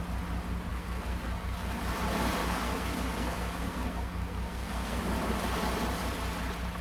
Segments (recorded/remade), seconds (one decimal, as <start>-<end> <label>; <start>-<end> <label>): 0.0-0.7 recorded; 0.7-1.8 remade; 1.8-2.4 recorded; 2.4-5.0 remade; 5.0-6.8 recorded